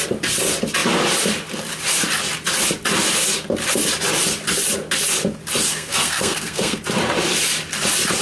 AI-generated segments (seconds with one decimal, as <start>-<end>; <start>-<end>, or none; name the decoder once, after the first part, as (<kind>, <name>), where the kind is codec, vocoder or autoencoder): 5.7-6.8 (codec, SNAC)